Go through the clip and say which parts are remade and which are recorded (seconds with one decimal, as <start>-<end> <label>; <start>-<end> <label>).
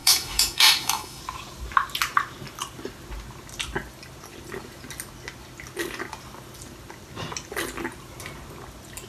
0.0-1.2 remade; 1.2-9.1 recorded